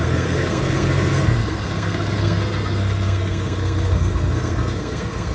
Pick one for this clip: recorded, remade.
remade